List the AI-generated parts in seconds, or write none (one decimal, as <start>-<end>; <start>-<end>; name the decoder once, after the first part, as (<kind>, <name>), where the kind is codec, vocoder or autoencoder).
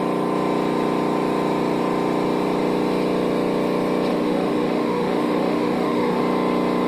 4.1-6.2 (autoencoder, DAC-VAE)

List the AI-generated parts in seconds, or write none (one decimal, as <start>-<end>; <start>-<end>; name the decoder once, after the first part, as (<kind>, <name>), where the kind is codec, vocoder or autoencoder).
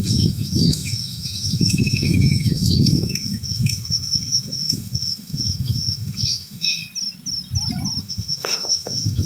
0.0-6.8 (autoencoder, DAC-VAE); 8.0-9.3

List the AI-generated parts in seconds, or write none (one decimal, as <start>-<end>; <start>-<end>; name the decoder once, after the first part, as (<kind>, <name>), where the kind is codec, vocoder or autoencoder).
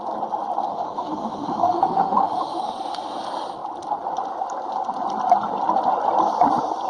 0.7-2.7 (autoencoder, DAC-VAE)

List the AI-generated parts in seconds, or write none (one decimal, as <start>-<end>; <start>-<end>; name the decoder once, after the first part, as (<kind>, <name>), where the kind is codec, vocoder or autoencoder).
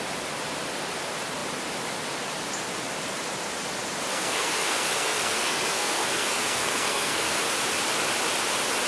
4.1-7.4 (codec, SNAC)